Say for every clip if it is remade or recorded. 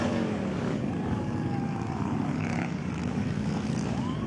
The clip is remade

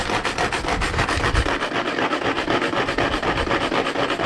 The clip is recorded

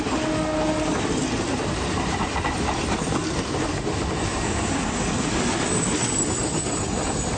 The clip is recorded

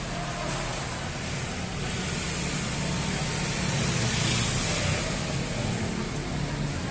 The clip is recorded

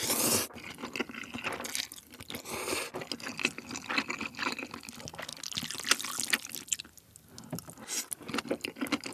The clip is recorded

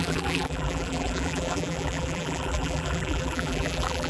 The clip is remade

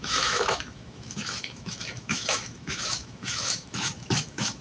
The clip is remade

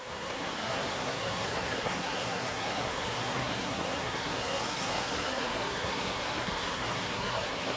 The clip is remade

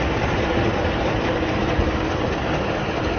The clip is recorded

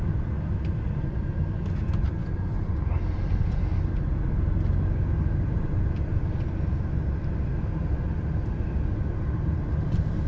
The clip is recorded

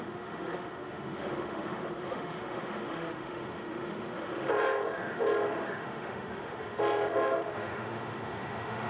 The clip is remade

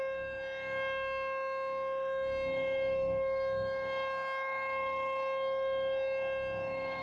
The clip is remade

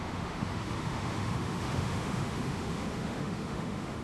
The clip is remade